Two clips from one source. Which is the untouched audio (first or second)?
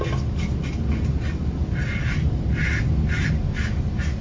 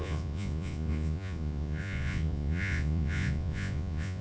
first